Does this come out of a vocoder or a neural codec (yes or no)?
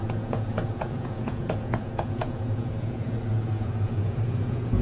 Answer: yes